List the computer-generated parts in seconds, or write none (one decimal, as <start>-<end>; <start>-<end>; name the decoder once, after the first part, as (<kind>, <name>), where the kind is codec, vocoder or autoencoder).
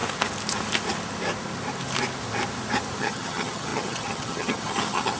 3.0-5.2 (vocoder, HiFi-GAN)